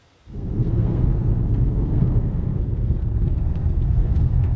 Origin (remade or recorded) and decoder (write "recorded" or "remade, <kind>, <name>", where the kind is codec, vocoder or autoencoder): remade, codec, SNAC